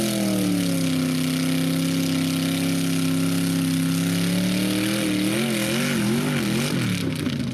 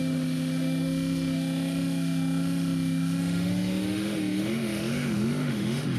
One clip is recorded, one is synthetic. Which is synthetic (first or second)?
second